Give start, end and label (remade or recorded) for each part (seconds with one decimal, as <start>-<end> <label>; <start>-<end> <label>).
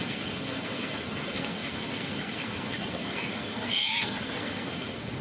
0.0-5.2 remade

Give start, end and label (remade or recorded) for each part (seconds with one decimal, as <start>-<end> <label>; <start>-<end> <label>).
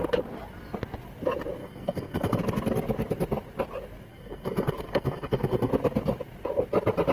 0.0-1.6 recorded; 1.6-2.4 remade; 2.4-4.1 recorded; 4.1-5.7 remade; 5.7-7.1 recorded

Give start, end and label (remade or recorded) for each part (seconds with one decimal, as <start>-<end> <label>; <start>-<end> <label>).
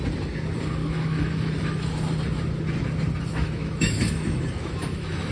0.0-0.8 recorded; 0.8-1.9 remade; 1.9-3.3 recorded; 3.3-5.3 remade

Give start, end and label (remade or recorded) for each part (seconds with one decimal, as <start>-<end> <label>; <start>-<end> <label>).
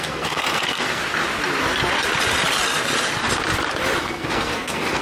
0.0-1.0 remade; 1.0-4.0 recorded; 4.0-5.0 remade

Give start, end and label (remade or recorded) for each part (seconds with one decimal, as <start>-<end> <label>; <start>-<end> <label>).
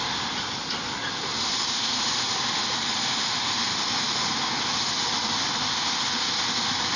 0.0-1.3 recorded; 1.3-1.9 remade; 1.9-7.0 recorded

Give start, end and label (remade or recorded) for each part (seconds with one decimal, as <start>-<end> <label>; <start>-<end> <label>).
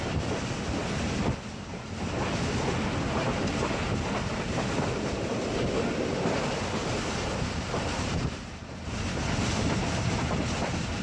0.0-6.8 recorded; 6.8-8.5 remade; 8.5-11.0 recorded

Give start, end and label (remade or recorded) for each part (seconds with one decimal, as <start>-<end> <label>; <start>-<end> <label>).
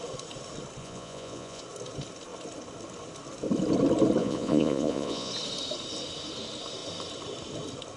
0.0-0.8 recorded; 0.8-1.6 remade; 1.6-4.2 recorded; 4.2-5.3 remade; 5.3-8.0 recorded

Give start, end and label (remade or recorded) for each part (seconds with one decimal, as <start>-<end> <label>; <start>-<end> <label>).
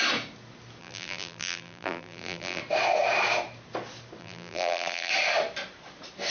0.0-0.8 recorded; 0.8-2.6 remade; 2.6-4.2 recorded; 4.2-5.1 remade; 5.1-6.3 recorded